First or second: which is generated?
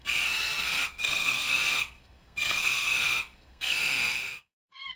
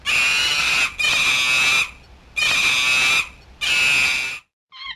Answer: first